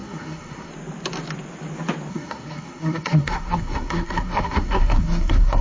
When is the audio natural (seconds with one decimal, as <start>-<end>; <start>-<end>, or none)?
0.7-2.1